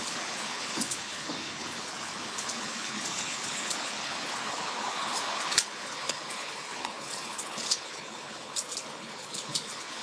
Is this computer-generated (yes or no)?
yes